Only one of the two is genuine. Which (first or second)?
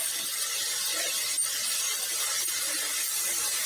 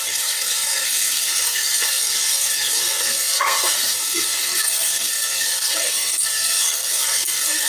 first